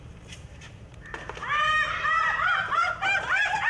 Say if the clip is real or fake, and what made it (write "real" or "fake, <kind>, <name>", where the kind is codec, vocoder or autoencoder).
fake, vocoder, BigVGAN v2